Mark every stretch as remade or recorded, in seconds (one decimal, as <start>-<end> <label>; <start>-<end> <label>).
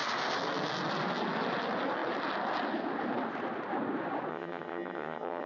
0.0-4.3 recorded; 4.3-5.5 remade